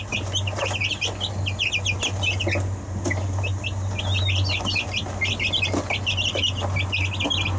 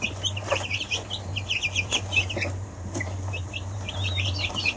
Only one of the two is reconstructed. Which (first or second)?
second